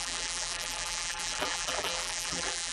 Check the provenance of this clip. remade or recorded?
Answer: remade